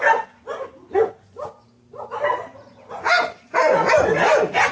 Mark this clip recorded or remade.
recorded